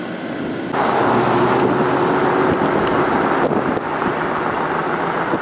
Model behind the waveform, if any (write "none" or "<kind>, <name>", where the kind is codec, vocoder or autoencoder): none